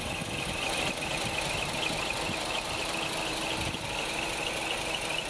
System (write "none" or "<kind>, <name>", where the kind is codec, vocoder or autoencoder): none